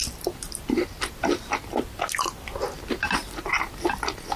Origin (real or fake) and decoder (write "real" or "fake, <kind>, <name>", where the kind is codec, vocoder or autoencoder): real